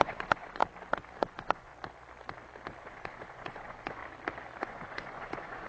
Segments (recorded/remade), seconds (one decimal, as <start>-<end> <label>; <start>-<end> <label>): 0.0-0.6 remade; 0.6-1.2 recorded; 1.2-1.7 remade; 1.7-2.8 recorded; 2.8-4.0 remade; 4.0-4.6 recorded; 4.6-5.7 remade